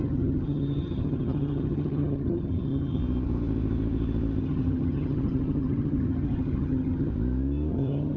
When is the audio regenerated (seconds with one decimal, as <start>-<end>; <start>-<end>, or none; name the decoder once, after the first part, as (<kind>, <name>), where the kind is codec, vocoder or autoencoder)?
0.0-3.0 (vocoder, HiFi-GAN); 4.4-7.1; 7.7-8.2

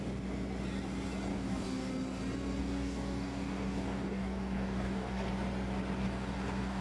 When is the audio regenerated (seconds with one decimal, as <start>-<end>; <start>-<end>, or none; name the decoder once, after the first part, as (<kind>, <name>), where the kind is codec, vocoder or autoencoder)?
1.3-1.9 (codec, DAC); 2.6-5.3; 6.0-6.8

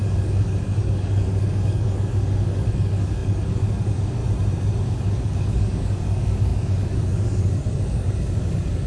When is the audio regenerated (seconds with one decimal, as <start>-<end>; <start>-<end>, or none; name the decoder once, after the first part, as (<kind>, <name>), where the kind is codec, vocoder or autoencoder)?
0.0-4.2 (codec, DAC); 4.8-8.9

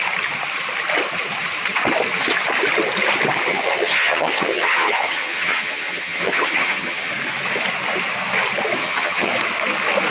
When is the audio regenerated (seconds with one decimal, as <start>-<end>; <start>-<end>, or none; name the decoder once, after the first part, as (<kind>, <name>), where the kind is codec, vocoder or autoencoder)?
3.5-7.1 (vocoder, HiFi-GAN); 8.8-9.3

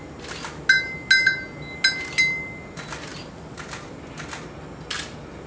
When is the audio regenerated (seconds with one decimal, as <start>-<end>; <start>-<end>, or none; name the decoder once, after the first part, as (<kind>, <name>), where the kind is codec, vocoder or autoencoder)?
none